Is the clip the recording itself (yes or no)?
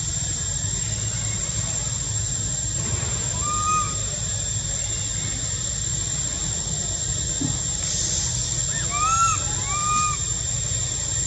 yes